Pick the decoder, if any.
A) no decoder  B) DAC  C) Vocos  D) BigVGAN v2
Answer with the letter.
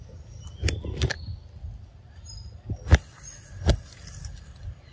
A